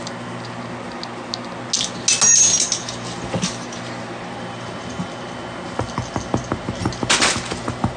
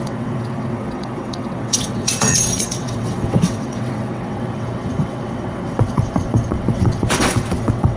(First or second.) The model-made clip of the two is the second